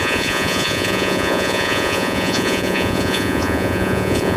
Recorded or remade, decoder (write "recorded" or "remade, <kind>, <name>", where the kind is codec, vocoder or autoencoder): remade, vocoder, Vocos